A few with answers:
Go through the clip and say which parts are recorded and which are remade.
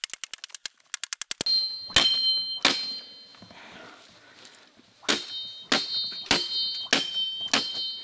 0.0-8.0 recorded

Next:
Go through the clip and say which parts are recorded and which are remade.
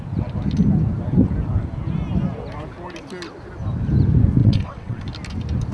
0.0-4.4 recorded; 4.4-5.0 remade; 5.0-5.7 recorded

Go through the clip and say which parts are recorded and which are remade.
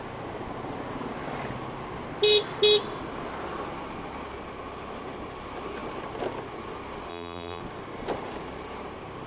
0.0-7.1 recorded; 7.1-7.6 remade; 7.6-9.3 recorded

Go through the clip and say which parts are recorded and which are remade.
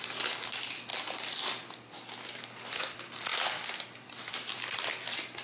0.0-5.4 recorded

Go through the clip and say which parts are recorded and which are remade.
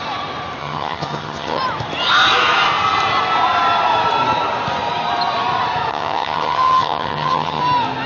0.0-0.6 recorded; 0.6-1.6 remade; 1.6-5.9 recorded; 5.9-7.6 remade; 7.6-8.1 recorded